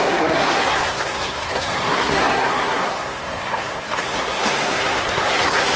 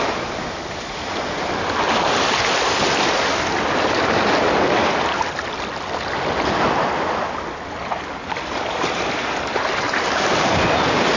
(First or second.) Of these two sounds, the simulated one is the first